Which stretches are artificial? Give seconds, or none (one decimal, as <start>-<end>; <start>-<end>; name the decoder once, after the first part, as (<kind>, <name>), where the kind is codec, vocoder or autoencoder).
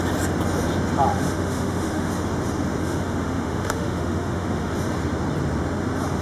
1.1-2.1 (autoencoder, DAC-VAE); 2.8-4.7